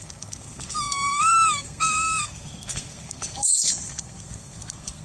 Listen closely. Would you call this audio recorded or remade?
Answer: remade